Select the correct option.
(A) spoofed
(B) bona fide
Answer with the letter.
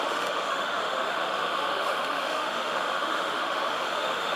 A